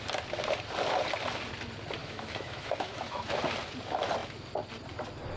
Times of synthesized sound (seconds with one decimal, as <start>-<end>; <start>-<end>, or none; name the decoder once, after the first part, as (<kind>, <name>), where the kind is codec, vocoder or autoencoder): 2.0-3.4 (autoencoder, DAC-VAE)